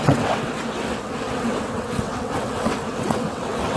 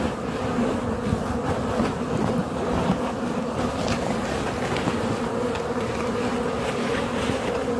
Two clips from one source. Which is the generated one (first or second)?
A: first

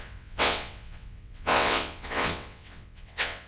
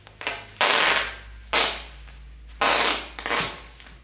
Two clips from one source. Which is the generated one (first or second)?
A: first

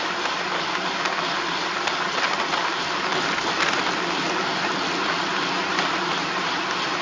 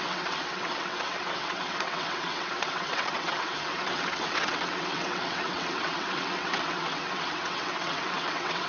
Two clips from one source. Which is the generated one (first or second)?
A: second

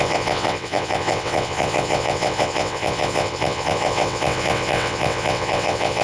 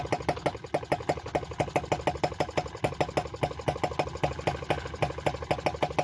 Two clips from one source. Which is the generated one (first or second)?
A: first